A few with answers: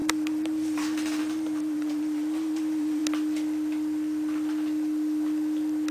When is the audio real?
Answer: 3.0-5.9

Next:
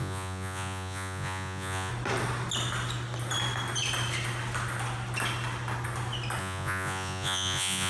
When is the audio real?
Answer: 1.9-6.4